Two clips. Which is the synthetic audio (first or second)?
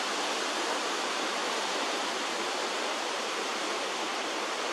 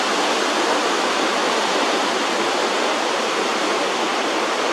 first